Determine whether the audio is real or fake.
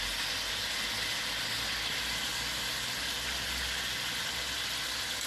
real